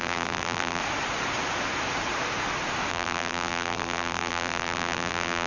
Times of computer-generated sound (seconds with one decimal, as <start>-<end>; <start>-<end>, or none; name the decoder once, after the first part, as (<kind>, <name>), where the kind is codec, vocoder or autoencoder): 0.0-0.8 (vocoder, BigVGAN v2); 2.9-5.5